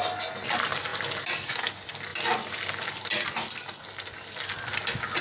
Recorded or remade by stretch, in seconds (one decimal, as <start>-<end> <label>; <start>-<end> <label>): 0.0-5.2 recorded

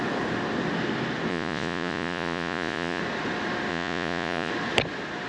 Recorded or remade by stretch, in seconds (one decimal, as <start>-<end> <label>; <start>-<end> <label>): 0.0-1.3 recorded; 1.3-3.0 remade; 3.0-3.7 recorded; 3.7-4.5 remade; 4.5-5.3 recorded